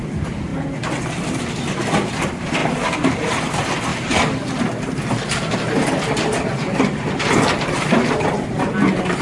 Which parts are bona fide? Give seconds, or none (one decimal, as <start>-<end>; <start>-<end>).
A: 0.0-9.2